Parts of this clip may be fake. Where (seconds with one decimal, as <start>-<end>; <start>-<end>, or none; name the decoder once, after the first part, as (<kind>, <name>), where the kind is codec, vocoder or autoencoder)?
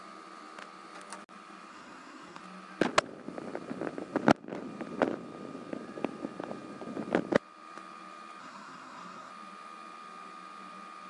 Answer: 1.7-2.4 (codec, SNAC); 8.4-9.3